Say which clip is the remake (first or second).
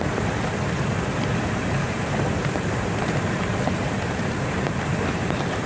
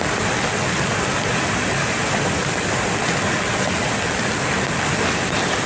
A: first